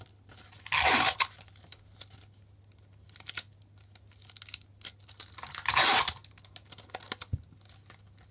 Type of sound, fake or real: real